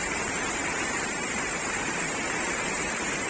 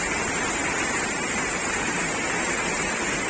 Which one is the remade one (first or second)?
first